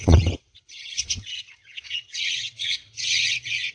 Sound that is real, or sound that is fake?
fake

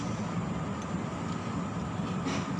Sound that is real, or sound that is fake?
real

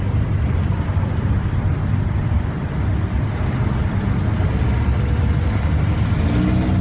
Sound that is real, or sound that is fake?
real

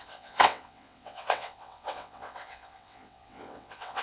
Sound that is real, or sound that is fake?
fake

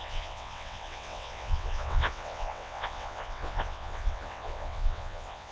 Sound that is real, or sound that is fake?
fake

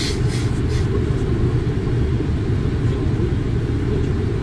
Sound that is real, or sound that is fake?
real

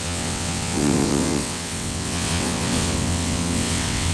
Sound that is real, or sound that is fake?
fake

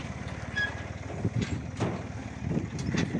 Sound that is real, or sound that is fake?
real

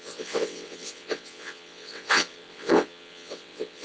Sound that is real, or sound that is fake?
fake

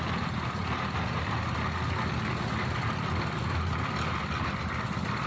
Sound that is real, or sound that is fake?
real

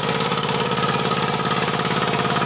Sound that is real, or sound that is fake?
real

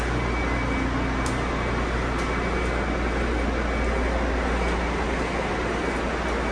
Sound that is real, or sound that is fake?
real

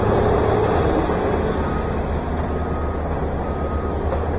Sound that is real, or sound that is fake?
real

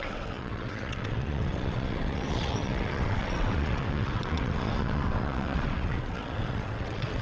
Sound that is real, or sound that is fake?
fake